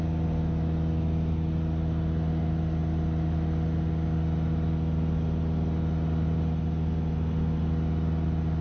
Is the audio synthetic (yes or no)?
no